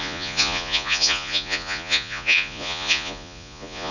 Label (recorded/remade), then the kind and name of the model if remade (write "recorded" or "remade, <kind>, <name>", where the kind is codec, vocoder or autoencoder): remade, vocoder, Vocos